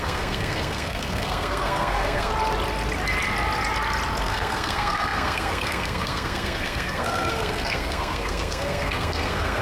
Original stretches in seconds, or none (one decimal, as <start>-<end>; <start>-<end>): 2.3-4.2